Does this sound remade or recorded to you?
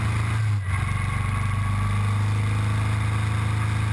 recorded